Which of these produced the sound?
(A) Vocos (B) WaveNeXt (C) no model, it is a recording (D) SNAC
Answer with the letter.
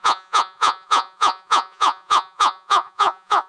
A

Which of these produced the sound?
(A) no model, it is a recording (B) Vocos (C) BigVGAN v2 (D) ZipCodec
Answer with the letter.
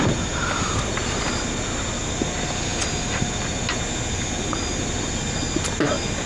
A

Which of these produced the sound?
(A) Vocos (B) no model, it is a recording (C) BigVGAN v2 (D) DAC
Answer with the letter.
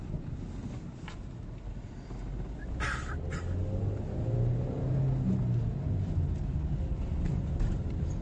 B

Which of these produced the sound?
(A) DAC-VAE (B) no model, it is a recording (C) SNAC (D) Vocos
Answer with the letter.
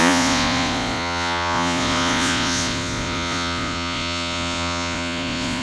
D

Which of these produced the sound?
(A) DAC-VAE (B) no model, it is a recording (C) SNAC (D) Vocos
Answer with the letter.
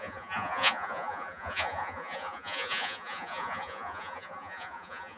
D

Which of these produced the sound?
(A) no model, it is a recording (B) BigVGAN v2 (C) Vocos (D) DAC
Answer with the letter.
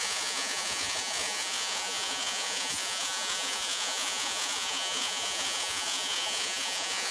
C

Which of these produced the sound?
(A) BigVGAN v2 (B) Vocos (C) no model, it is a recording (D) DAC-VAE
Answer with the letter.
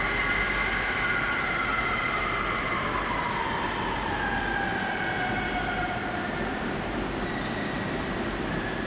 C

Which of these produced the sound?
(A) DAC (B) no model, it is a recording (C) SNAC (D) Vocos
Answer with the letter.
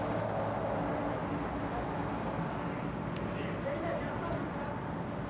B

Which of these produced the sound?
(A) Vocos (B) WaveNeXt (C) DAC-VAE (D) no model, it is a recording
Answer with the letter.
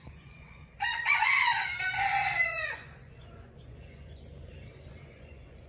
A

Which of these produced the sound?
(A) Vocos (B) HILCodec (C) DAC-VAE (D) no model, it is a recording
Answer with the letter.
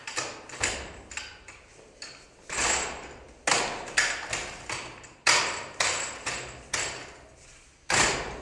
D